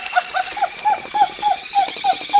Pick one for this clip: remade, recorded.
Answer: recorded